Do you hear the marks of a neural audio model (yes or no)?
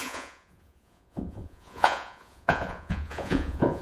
yes